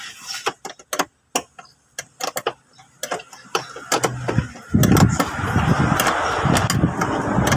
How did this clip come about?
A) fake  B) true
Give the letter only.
B